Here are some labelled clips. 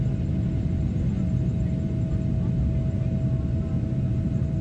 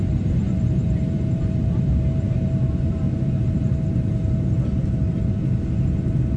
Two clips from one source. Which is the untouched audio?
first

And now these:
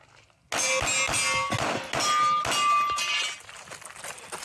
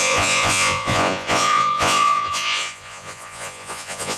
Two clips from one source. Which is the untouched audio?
first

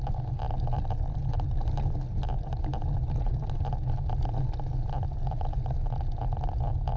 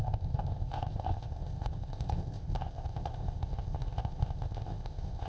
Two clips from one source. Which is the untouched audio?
first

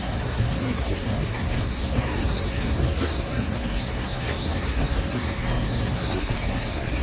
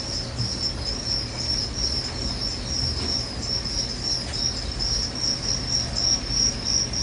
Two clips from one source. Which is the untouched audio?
second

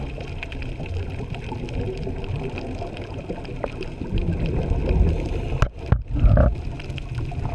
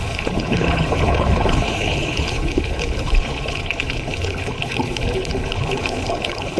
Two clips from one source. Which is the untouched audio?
first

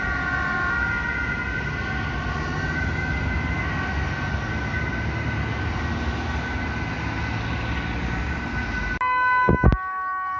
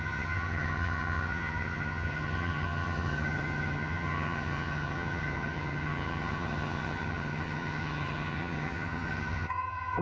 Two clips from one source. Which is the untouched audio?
first